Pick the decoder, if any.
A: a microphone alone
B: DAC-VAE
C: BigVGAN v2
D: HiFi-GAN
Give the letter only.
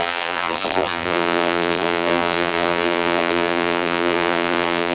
C